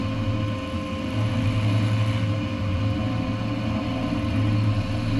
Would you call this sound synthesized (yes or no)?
no